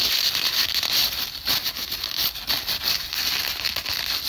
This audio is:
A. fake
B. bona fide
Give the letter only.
B